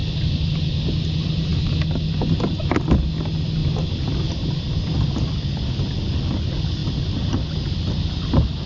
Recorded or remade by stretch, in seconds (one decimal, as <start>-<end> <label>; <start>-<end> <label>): 0.0-8.7 recorded